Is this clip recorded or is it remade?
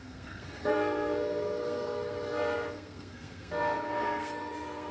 remade